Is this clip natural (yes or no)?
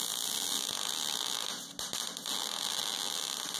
yes